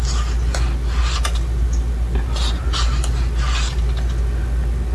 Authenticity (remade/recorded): recorded